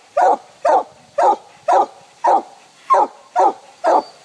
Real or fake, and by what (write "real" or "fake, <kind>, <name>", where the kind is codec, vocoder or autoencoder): real